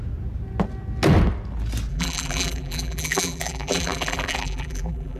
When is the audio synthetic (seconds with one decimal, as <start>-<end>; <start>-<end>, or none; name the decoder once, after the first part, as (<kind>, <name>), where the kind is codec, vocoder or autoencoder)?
1.9-5.2 (vocoder, BigVGAN v2)